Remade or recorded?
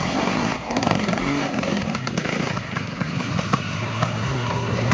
remade